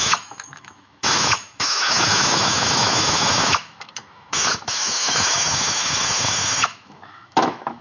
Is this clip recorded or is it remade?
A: remade